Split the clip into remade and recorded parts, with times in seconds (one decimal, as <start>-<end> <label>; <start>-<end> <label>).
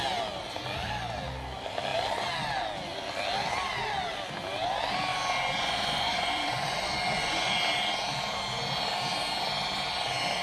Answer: 0.0-5.1 recorded; 5.1-7.6 remade; 7.6-10.4 recorded